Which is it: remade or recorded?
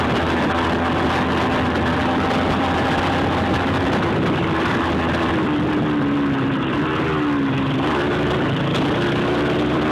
recorded